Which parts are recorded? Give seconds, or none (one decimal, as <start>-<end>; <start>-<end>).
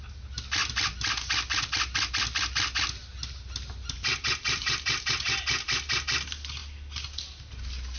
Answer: 0.0-4.6; 5.2-8.0